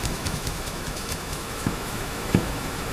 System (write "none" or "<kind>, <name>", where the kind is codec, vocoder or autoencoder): autoencoder, DAC-VAE